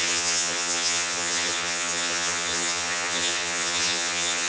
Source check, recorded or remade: remade